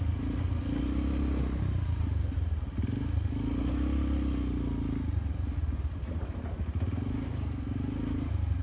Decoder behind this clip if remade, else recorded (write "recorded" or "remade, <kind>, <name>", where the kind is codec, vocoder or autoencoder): recorded